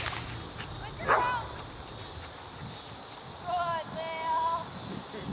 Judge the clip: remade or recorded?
recorded